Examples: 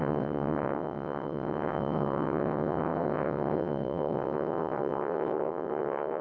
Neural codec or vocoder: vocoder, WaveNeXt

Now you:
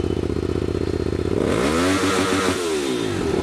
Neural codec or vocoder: none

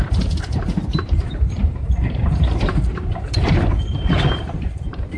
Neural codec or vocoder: vocoder, BigVGAN v2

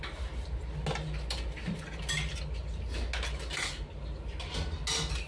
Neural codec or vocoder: none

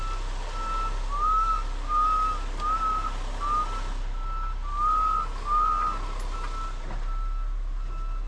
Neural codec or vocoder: none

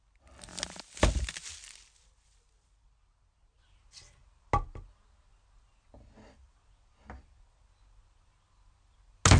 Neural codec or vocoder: none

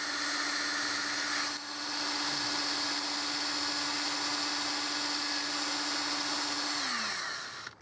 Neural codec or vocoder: none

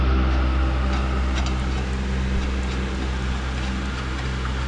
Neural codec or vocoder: none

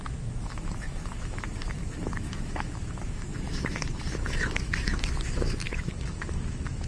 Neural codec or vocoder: autoencoder, DAC-VAE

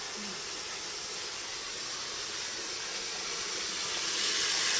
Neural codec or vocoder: none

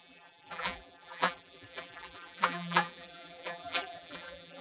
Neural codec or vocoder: vocoder, BigVGAN v2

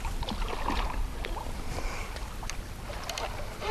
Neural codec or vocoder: vocoder, BigVGAN v2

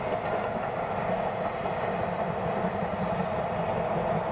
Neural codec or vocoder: none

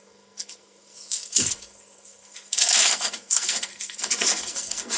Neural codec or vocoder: codec, SNAC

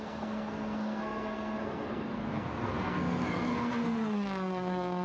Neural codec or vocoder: codec, SNAC